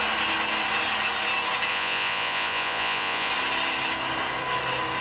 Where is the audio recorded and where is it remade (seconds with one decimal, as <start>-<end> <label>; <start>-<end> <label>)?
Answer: 0.0-1.7 recorded; 1.7-3.3 remade; 3.3-5.0 recorded